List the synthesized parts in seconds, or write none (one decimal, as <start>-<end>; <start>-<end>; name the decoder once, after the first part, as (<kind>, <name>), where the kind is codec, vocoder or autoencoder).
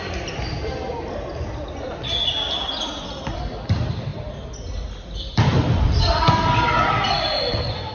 none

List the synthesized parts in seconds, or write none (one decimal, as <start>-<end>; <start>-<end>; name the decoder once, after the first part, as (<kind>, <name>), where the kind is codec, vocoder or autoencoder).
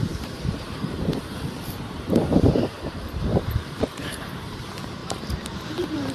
0.0-6.1 (vocoder, BigVGAN v2)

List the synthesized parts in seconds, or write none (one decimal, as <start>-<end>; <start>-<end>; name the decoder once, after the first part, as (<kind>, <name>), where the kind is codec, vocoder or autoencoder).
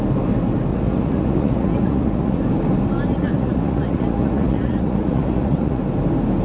0.7-2.4 (vocoder, Vocos); 3.1-5.8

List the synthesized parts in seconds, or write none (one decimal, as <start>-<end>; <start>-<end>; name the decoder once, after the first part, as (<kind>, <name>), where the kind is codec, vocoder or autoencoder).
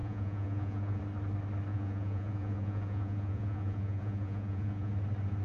0.0-1.0 (vocoder, Vocos); 1.7-4.9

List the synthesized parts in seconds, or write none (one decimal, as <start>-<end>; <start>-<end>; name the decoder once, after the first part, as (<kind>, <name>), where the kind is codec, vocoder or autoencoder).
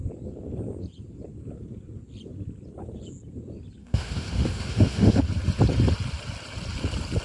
3.8-5.2 (autoencoder, DAC-VAE)